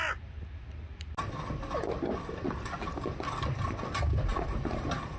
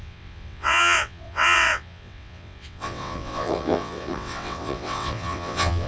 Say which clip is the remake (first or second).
second